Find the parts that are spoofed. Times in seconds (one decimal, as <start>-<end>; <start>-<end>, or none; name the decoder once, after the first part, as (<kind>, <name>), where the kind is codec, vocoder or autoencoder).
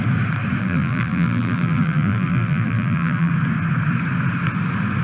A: 0.6-3.3 (vocoder, BigVGAN v2)